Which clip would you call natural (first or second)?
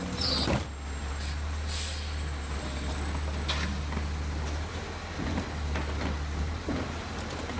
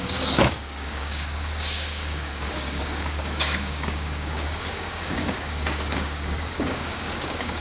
first